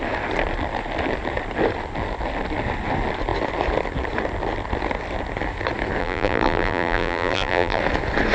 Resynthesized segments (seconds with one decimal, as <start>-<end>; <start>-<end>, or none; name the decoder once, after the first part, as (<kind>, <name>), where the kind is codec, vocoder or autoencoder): 6.0-7.8 (vocoder, BigVGAN v2)